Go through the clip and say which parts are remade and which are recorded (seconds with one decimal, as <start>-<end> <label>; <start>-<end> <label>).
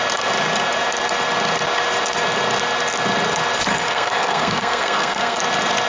0.0-3.7 recorded; 3.7-5.4 remade; 5.4-5.9 recorded